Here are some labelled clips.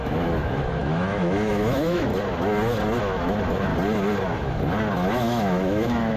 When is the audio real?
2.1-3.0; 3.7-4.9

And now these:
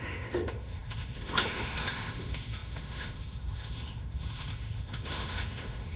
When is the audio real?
none

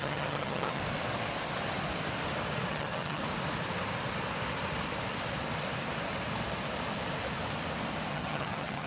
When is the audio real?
0.8-2.7; 3.2-8.1

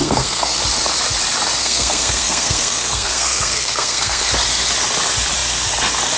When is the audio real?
0.6-1.6; 4.3-6.2

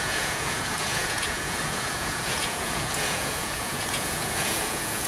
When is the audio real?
none